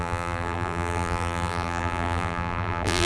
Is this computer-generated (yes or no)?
yes